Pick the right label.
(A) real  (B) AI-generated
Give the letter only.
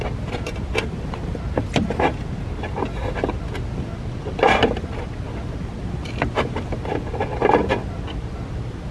A